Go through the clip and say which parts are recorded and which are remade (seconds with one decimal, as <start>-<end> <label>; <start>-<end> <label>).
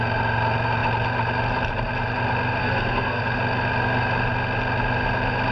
0.0-2.6 recorded; 2.6-3.2 remade; 3.2-5.5 recorded